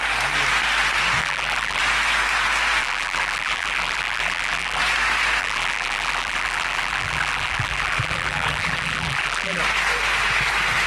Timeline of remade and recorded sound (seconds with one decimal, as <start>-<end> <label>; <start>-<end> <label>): 0.0-1.2 recorded; 1.2-1.8 remade; 1.8-2.8 recorded; 2.8-4.8 remade; 4.8-5.4 recorded; 5.4-9.6 remade; 9.6-10.9 recorded